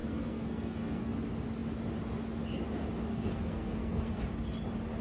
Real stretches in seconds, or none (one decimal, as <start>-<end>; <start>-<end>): 1.1-3.1; 4.2-5.0